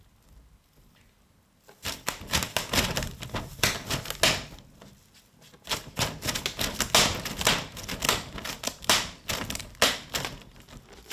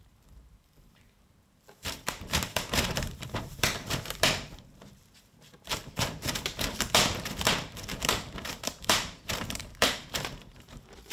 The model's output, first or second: second